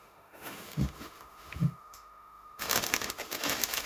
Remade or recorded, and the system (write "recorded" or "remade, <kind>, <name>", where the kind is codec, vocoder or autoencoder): remade, autoencoder, DAC-VAE